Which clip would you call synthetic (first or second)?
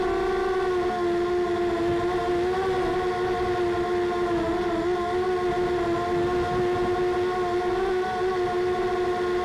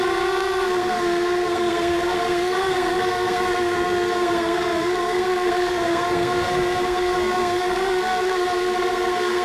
second